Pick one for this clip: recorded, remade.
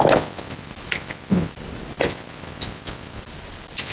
recorded